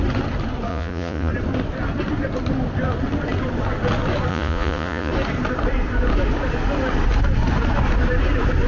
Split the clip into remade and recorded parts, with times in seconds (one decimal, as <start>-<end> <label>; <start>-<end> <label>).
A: 0.0-0.7 recorded; 0.7-1.3 remade; 1.3-4.3 recorded; 4.3-5.1 remade; 5.1-8.7 recorded